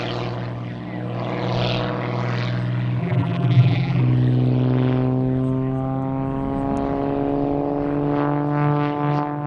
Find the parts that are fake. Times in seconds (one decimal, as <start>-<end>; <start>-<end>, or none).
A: 3.0-4.0